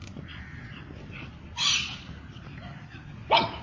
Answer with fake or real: real